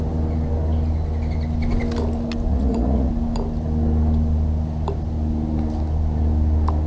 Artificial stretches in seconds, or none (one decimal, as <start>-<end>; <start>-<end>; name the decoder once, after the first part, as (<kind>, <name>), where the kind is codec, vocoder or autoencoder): 2.5-3.1 (vocoder, Vocos)